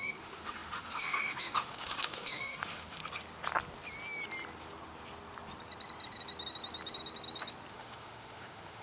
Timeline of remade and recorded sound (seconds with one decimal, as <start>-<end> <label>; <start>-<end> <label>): 0.0-3.0 remade; 3.0-7.7 recorded; 7.7-8.8 remade